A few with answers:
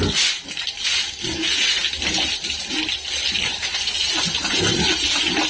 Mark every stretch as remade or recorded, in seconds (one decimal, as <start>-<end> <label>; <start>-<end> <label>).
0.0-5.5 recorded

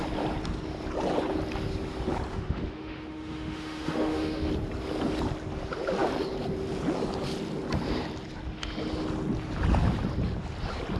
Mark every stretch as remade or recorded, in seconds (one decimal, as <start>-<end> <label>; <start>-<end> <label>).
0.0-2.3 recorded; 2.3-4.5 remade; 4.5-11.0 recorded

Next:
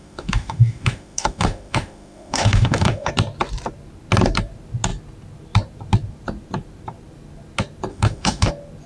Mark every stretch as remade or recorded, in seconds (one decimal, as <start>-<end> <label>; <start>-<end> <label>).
0.0-3.1 remade; 3.1-7.9 recorded; 7.9-8.5 remade; 8.5-8.9 recorded

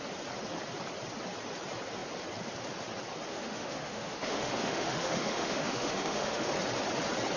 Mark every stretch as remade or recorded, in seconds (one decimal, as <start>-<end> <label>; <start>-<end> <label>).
0.0-3.3 recorded; 3.3-6.5 remade; 6.5-7.4 recorded

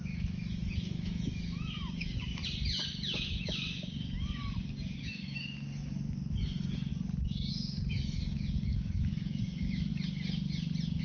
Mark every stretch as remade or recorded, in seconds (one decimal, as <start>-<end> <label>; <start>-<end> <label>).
0.0-2.4 remade; 2.4-2.9 recorded; 2.9-4.4 remade; 4.4-5.0 recorded; 5.0-6.9 remade; 6.9-7.5 recorded; 7.5-9.9 remade; 9.9-11.0 recorded

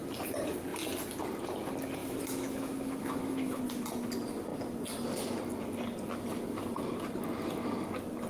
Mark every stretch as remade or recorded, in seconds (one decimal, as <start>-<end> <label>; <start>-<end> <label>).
0.0-2.0 recorded; 2.0-3.6 remade; 3.6-8.3 recorded

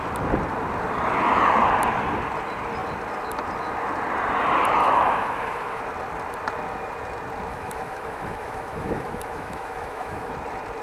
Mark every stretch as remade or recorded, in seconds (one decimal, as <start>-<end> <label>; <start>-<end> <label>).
0.0-4.8 recorded; 4.8-5.8 remade; 5.8-7.5 recorded; 7.5-10.3 remade; 10.3-10.8 recorded

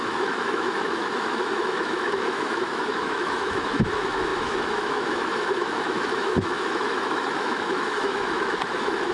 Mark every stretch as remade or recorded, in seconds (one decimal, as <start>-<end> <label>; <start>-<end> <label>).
0.0-9.1 remade